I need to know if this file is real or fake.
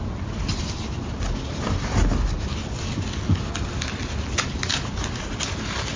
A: real